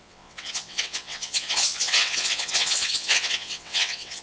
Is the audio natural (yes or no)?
no